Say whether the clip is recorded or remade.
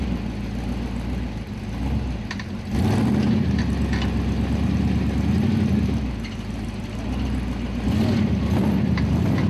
recorded